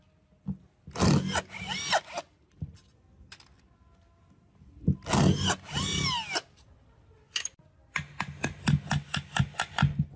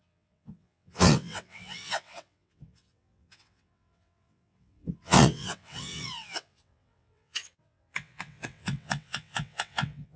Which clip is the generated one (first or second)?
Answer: second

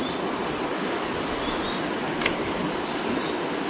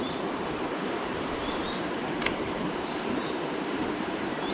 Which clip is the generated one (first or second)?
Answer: second